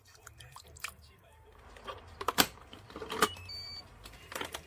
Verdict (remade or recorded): remade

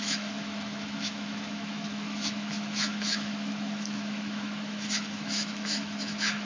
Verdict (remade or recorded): remade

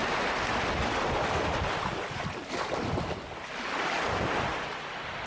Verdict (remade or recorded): recorded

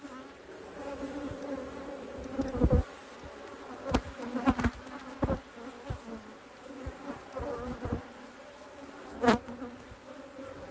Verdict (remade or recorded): recorded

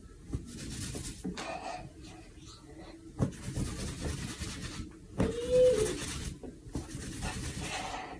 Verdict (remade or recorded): recorded